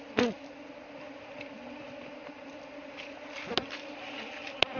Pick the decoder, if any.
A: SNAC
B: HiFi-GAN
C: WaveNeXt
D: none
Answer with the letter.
D